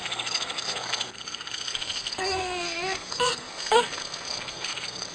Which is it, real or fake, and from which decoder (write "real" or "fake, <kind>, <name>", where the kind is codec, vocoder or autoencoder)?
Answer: fake, codec, SNAC